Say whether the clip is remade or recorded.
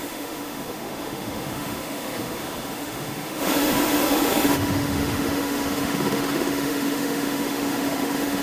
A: remade